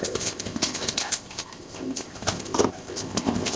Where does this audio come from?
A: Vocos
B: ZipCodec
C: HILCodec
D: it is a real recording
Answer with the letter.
B